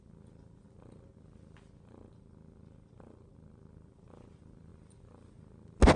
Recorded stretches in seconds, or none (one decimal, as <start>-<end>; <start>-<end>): 0.0-6.0